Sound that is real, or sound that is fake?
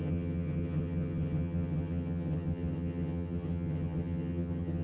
fake